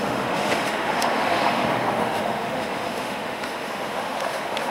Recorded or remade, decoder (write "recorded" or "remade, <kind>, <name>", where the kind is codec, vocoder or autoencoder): remade, autoencoder, DAC-VAE